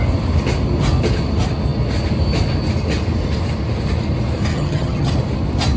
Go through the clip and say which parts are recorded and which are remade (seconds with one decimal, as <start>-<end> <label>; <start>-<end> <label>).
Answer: 0.0-4.5 recorded; 4.5-5.1 remade; 5.1-5.8 recorded